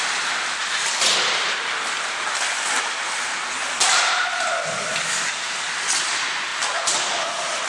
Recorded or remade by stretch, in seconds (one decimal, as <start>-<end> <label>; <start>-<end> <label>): 0.0-7.7 recorded